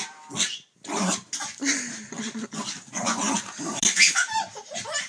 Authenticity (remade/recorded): recorded